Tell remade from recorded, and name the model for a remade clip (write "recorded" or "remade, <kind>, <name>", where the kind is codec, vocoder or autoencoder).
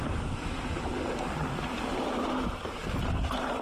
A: remade, vocoder, BigVGAN v2